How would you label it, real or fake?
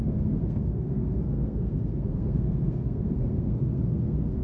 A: fake